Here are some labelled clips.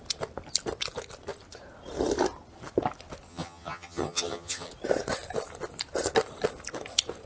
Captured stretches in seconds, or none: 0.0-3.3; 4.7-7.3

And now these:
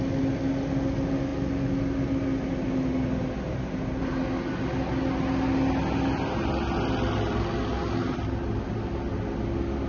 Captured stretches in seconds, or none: 0.0-9.9

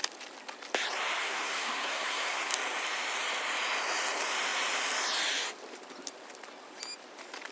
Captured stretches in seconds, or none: 0.0-1.2; 2.5-7.5

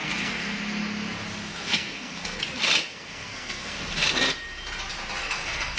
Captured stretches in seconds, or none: 0.6-1.5; 2.4-2.9; 3.9-5.2